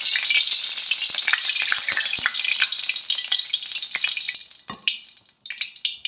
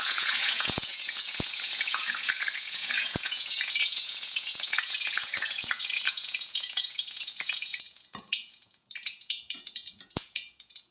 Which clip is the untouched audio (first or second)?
first